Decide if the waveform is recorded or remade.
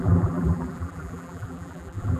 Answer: remade